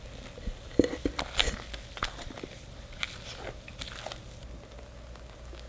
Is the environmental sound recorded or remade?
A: recorded